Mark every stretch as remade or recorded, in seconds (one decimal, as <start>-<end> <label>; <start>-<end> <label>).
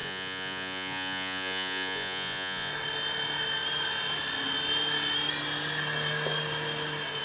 0.0-2.7 remade; 2.7-7.2 recorded